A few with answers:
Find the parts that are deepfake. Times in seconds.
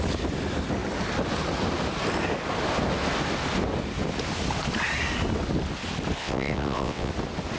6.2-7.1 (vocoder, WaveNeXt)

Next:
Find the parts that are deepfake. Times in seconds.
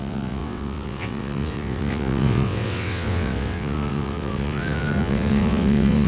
0.0-6.1 (vocoder, WaveNeXt)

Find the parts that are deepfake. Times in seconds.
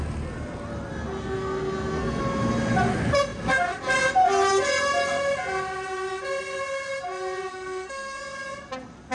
1.2-2.2 (codec, SNAC); 7.5-8.2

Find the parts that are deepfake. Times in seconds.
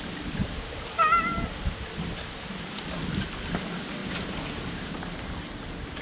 4.0-4.9 (vocoder, BigVGAN v2)